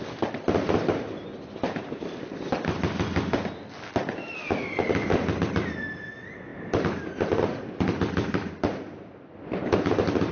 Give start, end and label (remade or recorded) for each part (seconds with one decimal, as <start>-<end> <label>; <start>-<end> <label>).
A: 0.0-1.3 recorded; 1.3-2.2 remade; 2.2-6.5 recorded; 6.5-7.6 remade; 7.6-10.3 recorded